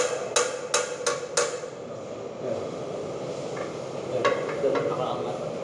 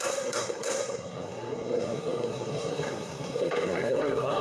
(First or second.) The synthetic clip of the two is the second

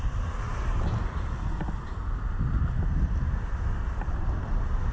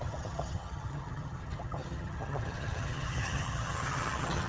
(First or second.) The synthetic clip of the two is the second